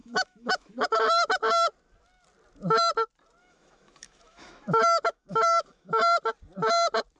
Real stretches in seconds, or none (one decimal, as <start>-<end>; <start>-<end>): 1.4-3.4; 5.9-7.2